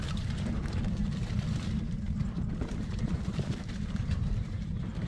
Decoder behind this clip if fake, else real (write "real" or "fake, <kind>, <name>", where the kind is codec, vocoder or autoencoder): fake, vocoder, BigVGAN v2